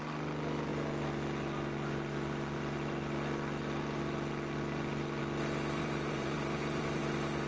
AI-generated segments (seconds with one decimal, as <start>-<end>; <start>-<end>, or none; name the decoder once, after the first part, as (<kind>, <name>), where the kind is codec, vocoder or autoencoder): 5.8-7.0 (vocoder, BigVGAN v2)

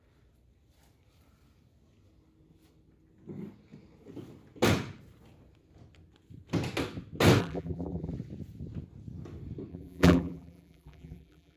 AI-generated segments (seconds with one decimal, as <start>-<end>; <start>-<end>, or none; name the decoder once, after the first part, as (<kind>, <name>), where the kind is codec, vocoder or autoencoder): 7.4-8.1 (vocoder, BigVGAN v2); 9.7-11.6

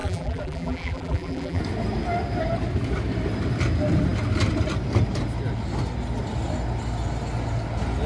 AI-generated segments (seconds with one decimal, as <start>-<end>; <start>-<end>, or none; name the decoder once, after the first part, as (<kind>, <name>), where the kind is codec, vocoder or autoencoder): 0.0-1.6 (vocoder, BigVGAN v2)

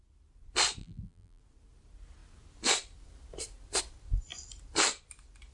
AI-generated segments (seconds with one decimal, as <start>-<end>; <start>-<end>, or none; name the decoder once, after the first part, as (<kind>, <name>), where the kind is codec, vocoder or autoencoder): 0.8-1.4 (vocoder, BigVGAN v2)